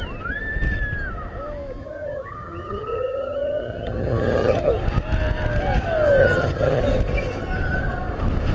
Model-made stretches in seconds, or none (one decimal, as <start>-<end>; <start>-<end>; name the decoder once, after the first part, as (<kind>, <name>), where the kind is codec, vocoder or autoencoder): 1.8-4.7 (vocoder, HiFi-GAN); 6.2-6.8